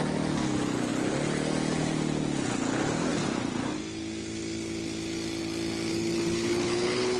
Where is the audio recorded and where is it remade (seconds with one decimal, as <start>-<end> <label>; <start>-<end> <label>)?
0.0-5.9 recorded; 5.9-7.2 remade